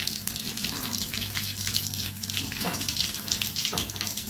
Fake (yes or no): yes